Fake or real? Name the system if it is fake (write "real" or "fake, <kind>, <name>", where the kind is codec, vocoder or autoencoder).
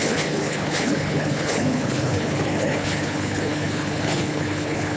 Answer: fake, codec, HILCodec